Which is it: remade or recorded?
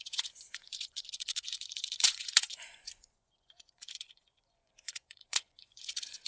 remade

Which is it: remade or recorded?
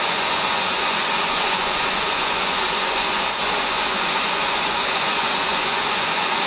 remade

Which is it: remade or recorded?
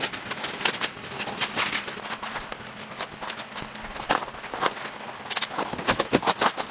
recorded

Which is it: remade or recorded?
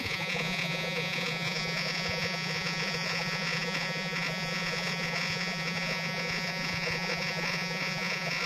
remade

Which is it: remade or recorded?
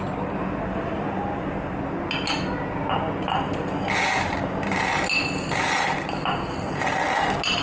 recorded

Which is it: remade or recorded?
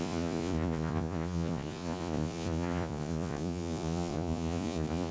remade